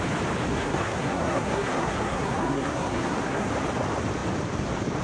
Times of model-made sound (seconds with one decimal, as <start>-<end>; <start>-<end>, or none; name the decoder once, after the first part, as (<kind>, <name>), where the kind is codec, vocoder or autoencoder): 0.5-3.5 (codec, SNAC)